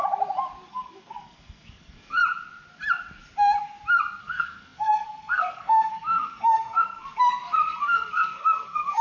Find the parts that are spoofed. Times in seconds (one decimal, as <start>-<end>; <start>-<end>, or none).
0.7-2.2; 4.2-9.0